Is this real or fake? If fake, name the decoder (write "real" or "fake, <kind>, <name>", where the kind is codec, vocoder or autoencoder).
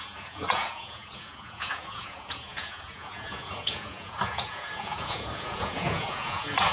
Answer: fake, vocoder, Vocos